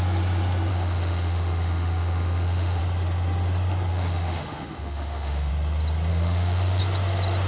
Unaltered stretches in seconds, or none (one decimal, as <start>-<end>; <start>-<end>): 0.0-0.7; 2.8-3.9; 5.5-6.1; 6.8-7.5